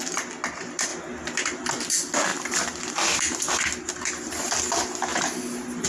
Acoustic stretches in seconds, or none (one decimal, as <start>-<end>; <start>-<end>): 0.0-2.3; 2.9-5.1